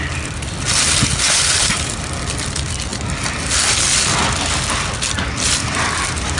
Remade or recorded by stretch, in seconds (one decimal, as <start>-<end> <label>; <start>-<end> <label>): 0.0-0.7 remade; 0.7-1.2 recorded; 1.2-2.9 remade; 2.9-5.5 recorded; 5.5-6.4 remade